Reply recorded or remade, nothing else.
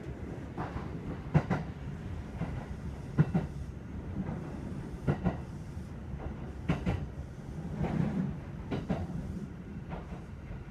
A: recorded